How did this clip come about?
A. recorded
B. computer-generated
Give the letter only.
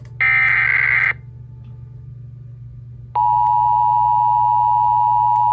A